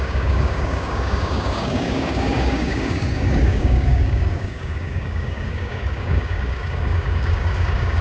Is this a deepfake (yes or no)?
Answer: yes